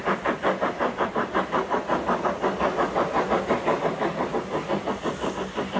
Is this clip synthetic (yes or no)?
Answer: no